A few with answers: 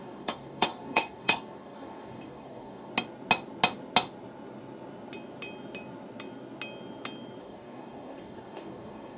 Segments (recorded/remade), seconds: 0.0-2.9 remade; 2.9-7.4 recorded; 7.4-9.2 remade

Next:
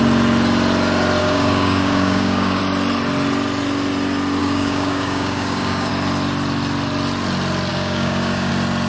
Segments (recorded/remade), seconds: 0.0-1.2 recorded; 1.2-2.6 remade; 2.6-4.4 recorded; 4.4-5.9 remade; 5.9-7.7 recorded; 7.7-8.5 remade; 8.5-8.9 recorded

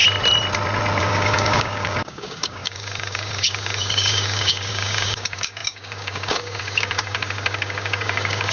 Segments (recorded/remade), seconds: 0.0-1.0 recorded; 1.0-8.5 remade

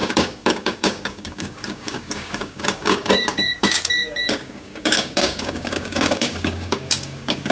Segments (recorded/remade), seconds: 0.0-7.5 remade